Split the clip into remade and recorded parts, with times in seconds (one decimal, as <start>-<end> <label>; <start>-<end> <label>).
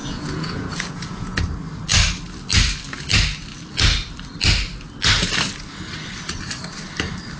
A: 0.0-1.4 remade; 1.4-7.4 recorded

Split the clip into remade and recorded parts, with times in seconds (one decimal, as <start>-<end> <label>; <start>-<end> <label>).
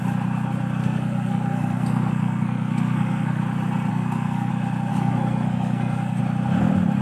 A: 0.0-0.8 recorded; 0.8-3.4 remade; 3.4-3.9 recorded; 3.9-4.5 remade; 4.5-4.9 recorded; 4.9-6.2 remade; 6.2-7.0 recorded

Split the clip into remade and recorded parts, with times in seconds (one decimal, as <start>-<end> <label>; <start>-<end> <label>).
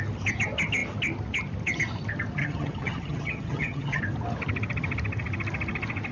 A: 0.0-2.4 recorded; 2.4-4.0 remade; 4.0-6.1 recorded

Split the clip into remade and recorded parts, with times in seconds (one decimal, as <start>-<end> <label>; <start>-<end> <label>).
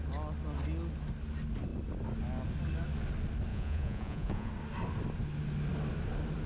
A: 0.0-3.5 recorded; 3.5-4.5 remade; 4.5-6.5 recorded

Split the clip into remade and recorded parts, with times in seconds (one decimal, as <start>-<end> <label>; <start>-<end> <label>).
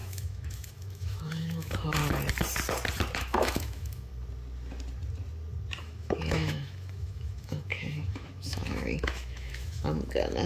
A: 0.0-2.0 remade; 2.0-3.2 recorded; 3.2-4.1 remade; 4.1-5.8 recorded; 5.8-10.5 remade